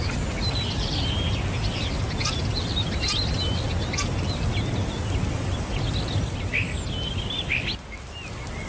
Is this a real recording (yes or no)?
yes